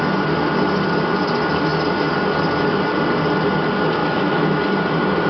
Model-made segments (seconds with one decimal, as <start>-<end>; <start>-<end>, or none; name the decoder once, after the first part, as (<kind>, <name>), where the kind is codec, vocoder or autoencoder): 4.0-4.6 (autoencoder, DAC-VAE)